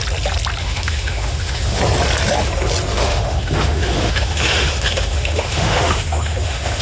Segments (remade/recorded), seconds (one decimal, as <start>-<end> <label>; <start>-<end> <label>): 0.0-0.6 recorded; 0.6-1.8 remade; 1.8-2.9 recorded; 2.9-6.8 remade